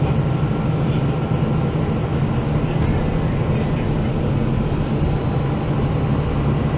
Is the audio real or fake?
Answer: real